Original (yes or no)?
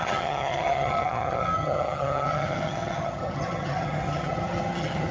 no